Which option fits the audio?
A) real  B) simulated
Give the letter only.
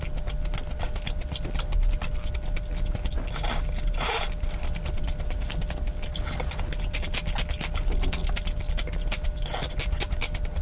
A